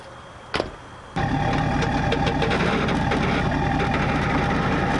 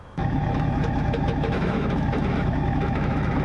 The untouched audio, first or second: first